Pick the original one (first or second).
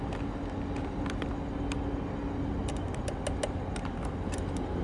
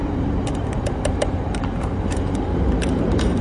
first